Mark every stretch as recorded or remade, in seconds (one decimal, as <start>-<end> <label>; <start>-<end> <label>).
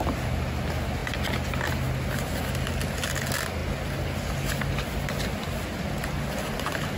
0.0-7.0 recorded